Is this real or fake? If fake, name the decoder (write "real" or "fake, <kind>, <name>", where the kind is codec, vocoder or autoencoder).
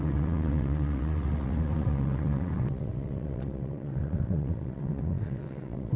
fake, vocoder, WaveNeXt